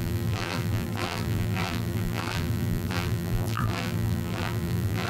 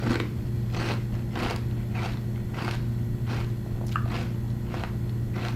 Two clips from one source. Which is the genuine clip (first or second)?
second